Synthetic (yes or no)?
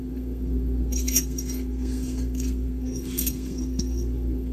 yes